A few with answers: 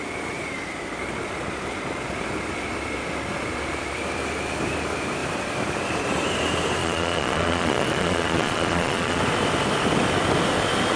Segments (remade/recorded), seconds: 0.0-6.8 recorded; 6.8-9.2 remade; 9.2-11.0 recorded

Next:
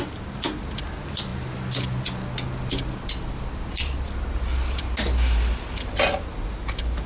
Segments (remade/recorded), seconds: 0.0-7.1 recorded

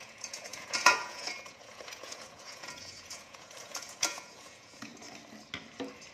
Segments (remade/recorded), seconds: 0.0-4.9 remade; 4.9-6.1 recorded

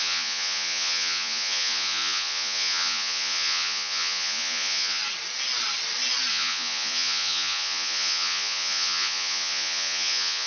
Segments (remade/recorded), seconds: 0.0-5.0 remade; 5.0-6.3 recorded; 6.3-10.5 remade

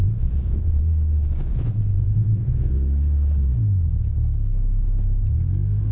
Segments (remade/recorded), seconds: 0.0-0.8 remade; 0.8-1.5 recorded; 1.5-2.7 remade; 2.7-5.9 recorded

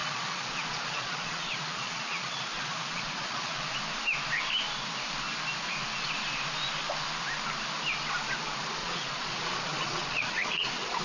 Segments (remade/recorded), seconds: 0.0-3.7 remade; 3.7-8.8 recorded; 8.8-11.0 remade

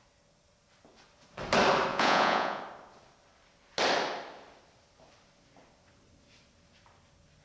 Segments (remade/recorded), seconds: 0.0-1.9 recorded; 1.9-2.6 remade; 2.6-7.4 recorded

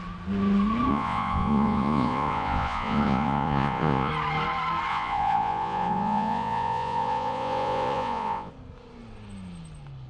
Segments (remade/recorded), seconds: 0.0-0.9 recorded; 0.9-4.1 remade; 4.1-4.9 recorded; 4.9-8.5 remade; 8.5-10.1 recorded